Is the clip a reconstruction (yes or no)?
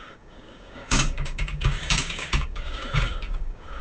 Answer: yes